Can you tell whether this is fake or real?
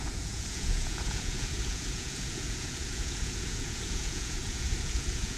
fake